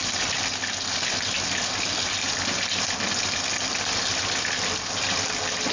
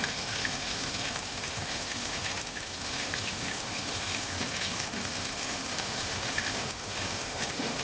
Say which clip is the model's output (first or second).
second